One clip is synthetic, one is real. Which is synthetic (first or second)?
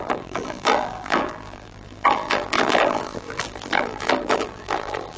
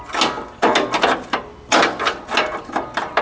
first